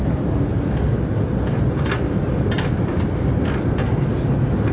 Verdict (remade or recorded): recorded